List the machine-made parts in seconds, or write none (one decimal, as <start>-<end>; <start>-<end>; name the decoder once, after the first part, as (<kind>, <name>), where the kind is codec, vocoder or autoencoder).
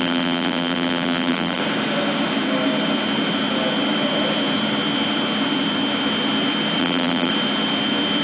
0.0-1.6 (vocoder, BigVGAN v2); 6.8-7.3